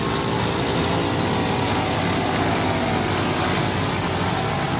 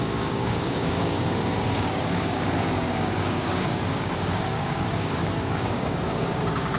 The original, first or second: first